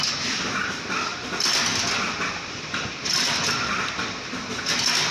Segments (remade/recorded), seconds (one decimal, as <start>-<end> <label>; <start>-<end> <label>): 0.0-1.7 recorded; 1.7-4.2 remade; 4.2-5.1 recorded